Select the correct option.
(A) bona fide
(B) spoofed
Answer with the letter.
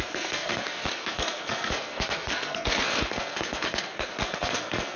B